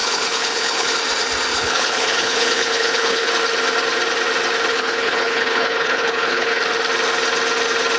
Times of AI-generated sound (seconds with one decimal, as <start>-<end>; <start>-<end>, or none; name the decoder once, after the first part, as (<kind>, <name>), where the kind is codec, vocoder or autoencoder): 0.0-1.0 (codec, HILCodec); 1.5-3.3; 4.7-6.6